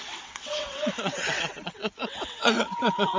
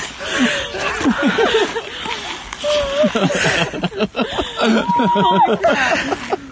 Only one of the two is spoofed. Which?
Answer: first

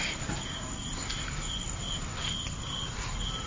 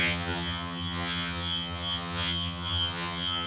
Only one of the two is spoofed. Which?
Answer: second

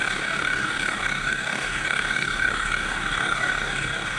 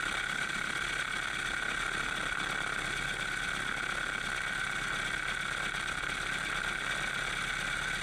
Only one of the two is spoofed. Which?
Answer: first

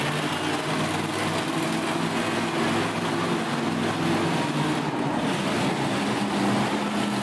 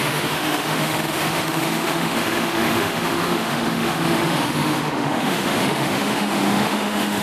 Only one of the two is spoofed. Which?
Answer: second